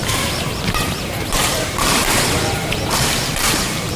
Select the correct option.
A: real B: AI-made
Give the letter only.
B